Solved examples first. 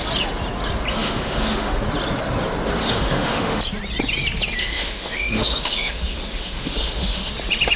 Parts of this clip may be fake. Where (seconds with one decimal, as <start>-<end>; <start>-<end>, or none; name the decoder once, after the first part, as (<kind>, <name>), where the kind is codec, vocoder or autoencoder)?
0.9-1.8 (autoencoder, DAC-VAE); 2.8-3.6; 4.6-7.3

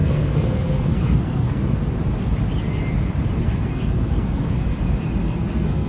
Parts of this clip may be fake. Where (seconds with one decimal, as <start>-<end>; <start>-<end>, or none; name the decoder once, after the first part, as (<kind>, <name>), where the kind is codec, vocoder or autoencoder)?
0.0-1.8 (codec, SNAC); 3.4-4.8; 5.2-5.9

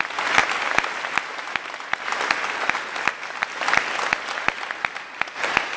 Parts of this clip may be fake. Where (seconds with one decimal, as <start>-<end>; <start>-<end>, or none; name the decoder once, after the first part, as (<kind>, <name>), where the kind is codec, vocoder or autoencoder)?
none

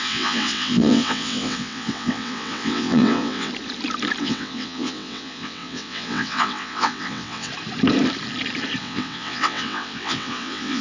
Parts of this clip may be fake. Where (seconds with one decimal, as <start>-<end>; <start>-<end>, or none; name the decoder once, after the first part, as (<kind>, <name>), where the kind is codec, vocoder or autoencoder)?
0.0-3.5 (vocoder, WaveNeXt); 4.2-7.5; 8.8-10.8

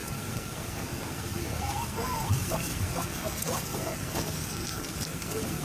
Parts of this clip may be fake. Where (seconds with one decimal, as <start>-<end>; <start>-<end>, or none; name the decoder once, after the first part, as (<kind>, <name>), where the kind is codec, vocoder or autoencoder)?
0.0-5.6 (codec, SNAC)

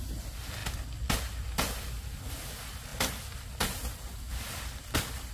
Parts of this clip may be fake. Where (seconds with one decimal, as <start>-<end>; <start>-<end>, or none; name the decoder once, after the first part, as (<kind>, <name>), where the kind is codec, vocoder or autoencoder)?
none

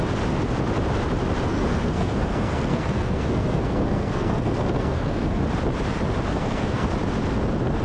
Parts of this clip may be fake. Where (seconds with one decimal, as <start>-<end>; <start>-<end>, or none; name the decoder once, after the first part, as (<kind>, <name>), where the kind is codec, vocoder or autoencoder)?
1.5-5.4 (codec, SNAC); 6.3-6.9

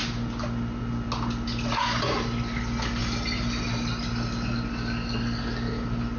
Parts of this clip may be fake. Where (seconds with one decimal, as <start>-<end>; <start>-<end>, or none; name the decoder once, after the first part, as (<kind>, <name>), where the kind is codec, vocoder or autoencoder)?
3.0-3.6 (vocoder, BigVGAN v2)